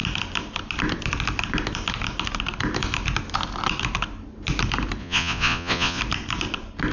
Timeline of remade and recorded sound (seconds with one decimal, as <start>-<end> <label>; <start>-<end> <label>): 0.0-5.0 recorded; 5.0-6.0 remade; 6.0-6.9 recorded